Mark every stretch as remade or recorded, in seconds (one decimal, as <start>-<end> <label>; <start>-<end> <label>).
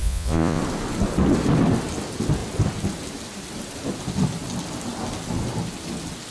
0.0-0.6 remade; 0.6-6.3 recorded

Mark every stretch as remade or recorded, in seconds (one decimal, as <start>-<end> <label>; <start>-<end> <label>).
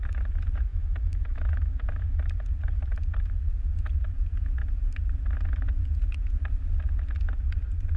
0.0-0.7 recorded; 0.7-2.2 remade; 2.2-8.0 recorded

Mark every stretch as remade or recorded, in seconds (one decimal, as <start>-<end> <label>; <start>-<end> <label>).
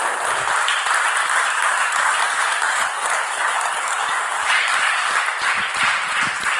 0.0-1.2 recorded; 1.2-5.2 remade; 5.2-6.6 recorded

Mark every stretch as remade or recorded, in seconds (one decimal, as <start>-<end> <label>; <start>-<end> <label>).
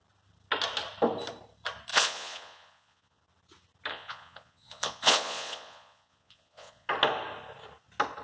0.0-1.9 recorded; 1.9-3.2 remade; 3.2-3.9 recorded; 3.9-6.9 remade; 6.9-8.2 recorded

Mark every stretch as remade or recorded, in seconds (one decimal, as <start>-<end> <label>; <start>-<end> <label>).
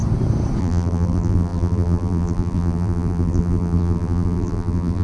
0.0-0.6 recorded; 0.6-5.0 remade